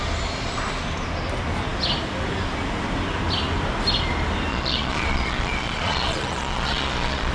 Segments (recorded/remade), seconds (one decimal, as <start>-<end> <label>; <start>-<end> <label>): 0.0-4.5 recorded; 4.5-7.3 remade